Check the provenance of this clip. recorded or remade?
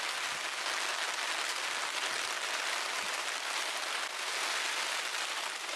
recorded